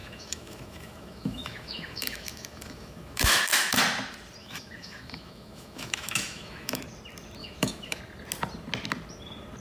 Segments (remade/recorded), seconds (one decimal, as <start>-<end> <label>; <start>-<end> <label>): 0.0-3.8 remade; 3.8-4.4 recorded; 4.4-6.8 remade; 6.8-7.4 recorded; 7.4-8.0 remade; 8.0-9.6 recorded